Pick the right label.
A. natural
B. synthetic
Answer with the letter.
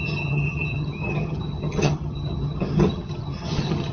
B